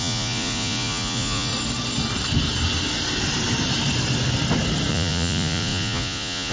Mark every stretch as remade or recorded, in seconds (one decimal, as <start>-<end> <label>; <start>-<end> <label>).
0.0-1.5 remade; 1.5-4.9 recorded; 4.9-6.5 remade